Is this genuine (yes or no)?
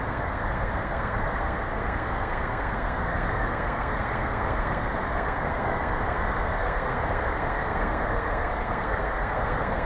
no